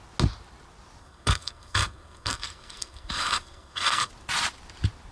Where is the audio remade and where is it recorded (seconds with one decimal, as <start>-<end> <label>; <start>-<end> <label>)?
0.0-1.0 recorded; 1.0-4.1 remade; 4.1-5.1 recorded